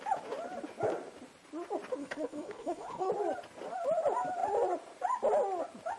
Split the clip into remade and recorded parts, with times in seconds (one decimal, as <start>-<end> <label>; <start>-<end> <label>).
0.0-2.0 recorded; 2.0-3.1 remade; 3.1-6.0 recorded